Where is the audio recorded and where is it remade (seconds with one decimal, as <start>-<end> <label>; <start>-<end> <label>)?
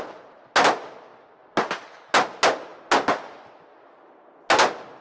0.0-5.0 recorded